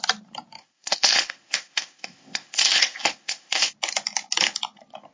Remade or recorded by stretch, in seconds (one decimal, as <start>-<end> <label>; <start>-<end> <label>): 0.0-0.6 recorded; 0.6-3.7 remade; 3.7-5.1 recorded